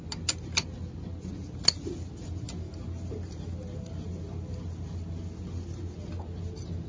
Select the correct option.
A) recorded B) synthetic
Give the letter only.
A